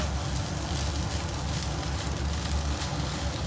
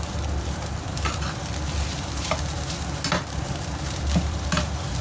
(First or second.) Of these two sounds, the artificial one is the second